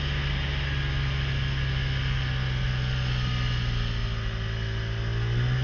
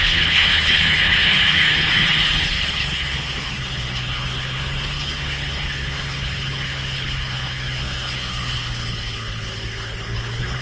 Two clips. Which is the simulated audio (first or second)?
second